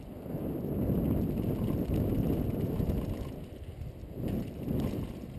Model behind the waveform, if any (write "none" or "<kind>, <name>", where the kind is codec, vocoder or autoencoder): none